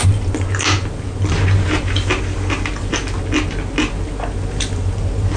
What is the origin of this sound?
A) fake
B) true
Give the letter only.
B